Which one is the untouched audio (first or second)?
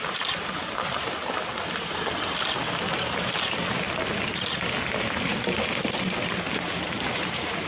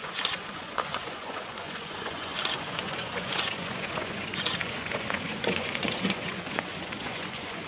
first